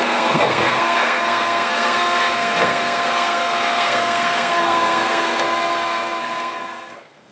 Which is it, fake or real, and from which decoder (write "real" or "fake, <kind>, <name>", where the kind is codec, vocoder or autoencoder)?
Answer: fake, codec, SNAC